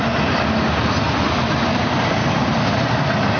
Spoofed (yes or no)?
no